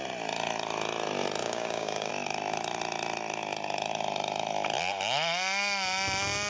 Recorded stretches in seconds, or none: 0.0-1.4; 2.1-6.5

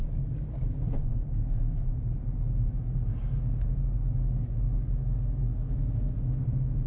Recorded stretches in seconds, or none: 0.0-3.1; 6.2-6.9

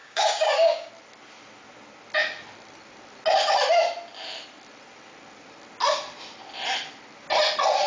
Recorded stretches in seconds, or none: 0.9-7.9

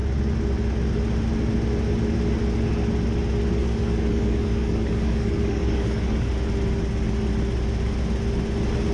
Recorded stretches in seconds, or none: 0.0-3.6; 6.3-8.9

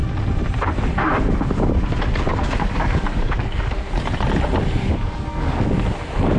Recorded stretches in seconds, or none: 0.0-2.3; 3.7-4.8; 5.6-6.4